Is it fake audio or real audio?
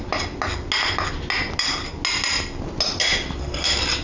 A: real